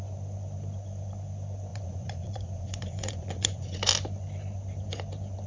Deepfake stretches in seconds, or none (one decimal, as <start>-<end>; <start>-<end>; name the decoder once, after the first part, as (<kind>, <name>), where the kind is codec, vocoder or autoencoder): 1.7-3.9 (vocoder, Vocos)